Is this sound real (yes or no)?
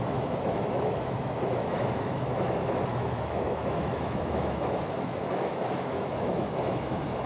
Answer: no